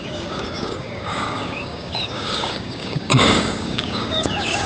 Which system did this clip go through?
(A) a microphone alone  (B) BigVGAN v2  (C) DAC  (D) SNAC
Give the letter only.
C